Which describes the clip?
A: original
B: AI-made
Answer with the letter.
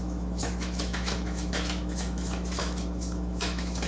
B